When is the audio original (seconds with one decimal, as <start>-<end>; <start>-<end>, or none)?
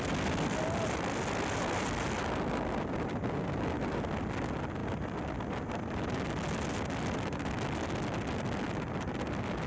0.0-9.7